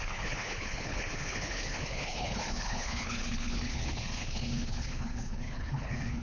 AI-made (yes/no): yes